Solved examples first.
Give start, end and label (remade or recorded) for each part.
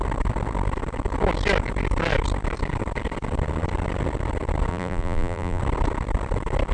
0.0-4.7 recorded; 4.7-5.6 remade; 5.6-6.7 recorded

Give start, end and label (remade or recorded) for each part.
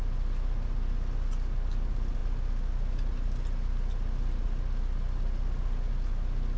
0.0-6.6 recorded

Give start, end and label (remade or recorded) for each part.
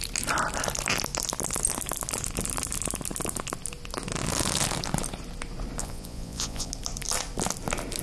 0.0-5.8 recorded; 5.8-6.7 remade; 6.7-8.0 recorded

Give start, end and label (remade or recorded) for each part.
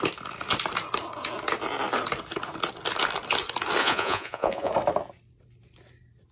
0.0-3.8 recorded; 3.8-4.7 remade; 4.7-6.3 recorded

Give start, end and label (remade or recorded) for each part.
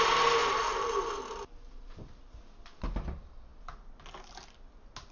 0.0-5.1 recorded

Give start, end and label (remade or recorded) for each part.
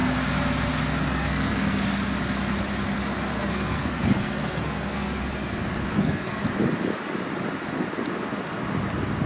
0.0-1.1 recorded; 1.1-1.8 remade; 1.8-3.3 recorded; 3.3-5.2 remade; 5.2-5.9 recorded; 5.9-6.4 remade; 6.4-9.3 recorded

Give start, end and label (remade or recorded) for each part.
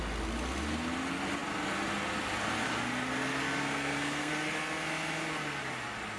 0.0-3.6 recorded; 3.6-4.3 remade; 4.3-6.2 recorded